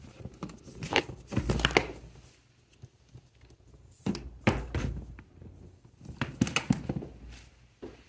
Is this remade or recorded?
recorded